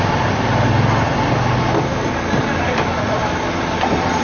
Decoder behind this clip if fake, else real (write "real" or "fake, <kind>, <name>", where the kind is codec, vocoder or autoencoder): real